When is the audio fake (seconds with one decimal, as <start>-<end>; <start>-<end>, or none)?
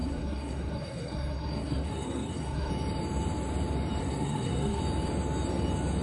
0.0-2.7; 4.0-4.8